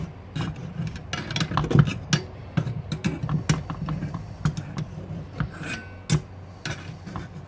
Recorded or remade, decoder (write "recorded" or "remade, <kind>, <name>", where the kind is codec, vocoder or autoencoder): recorded